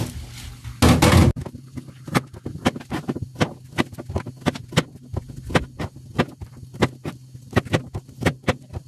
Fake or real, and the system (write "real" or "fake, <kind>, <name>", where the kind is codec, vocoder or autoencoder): real